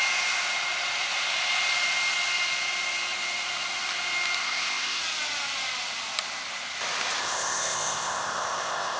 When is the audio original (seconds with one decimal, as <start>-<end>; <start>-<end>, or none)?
0.0-4.4; 5.0-7.2